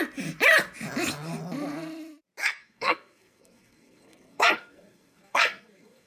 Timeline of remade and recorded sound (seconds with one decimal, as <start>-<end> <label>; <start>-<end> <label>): 0.0-2.4 recorded; 2.4-6.1 remade